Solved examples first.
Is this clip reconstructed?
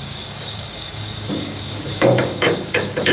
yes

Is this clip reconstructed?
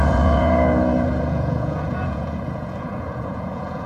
yes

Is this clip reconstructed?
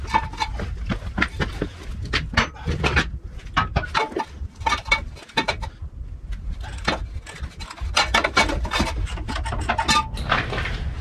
no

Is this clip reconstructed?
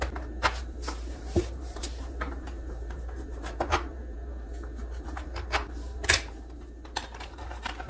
yes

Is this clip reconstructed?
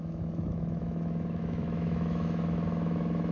yes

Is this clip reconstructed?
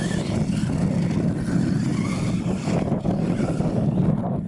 no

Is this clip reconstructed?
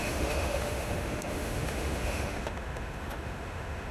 yes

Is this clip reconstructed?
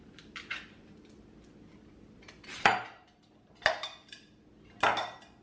no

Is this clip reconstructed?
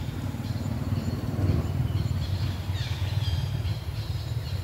yes